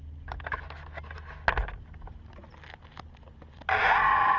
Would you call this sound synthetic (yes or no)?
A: no